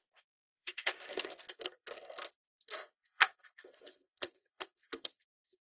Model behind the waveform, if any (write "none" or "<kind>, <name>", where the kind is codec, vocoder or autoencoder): codec, SNAC